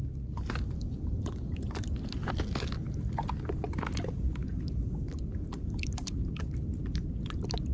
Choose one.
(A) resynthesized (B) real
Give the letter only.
B